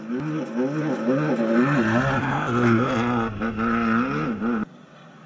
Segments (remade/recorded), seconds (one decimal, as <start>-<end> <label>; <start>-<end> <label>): 0.0-2.2 recorded; 2.2-2.9 remade; 2.9-5.3 recorded